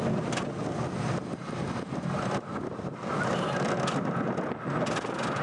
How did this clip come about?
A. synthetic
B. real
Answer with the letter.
B